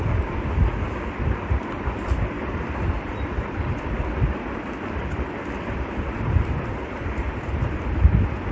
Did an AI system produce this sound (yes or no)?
yes